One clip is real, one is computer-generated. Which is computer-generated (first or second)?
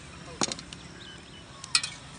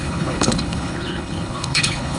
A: second